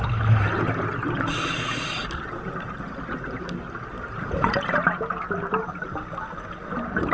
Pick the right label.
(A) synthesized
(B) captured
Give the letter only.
B